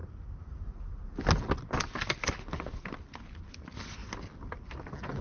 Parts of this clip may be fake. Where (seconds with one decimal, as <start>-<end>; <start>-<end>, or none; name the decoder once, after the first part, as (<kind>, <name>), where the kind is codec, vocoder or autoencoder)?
none